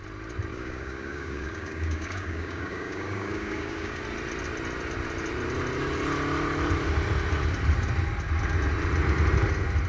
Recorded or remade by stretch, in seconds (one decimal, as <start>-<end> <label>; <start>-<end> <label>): 0.0-0.5 recorded; 0.5-4.0 remade; 4.0-9.9 recorded